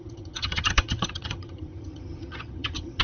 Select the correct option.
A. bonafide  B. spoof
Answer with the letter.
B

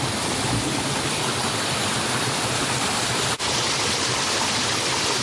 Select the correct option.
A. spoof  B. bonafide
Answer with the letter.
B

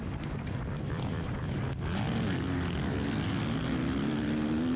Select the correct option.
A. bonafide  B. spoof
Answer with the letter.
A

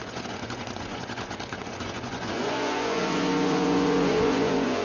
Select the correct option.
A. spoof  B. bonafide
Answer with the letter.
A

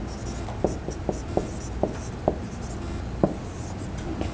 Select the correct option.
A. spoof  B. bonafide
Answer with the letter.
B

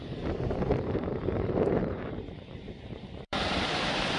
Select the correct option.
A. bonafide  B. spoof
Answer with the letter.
B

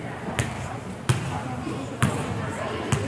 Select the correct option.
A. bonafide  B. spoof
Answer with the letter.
A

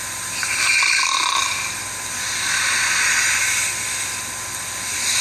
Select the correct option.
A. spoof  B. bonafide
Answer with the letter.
B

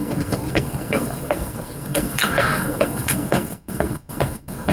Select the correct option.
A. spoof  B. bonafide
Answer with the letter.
A